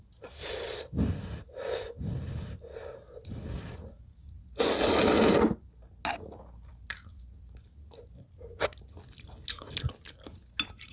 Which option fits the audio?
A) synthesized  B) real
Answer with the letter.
B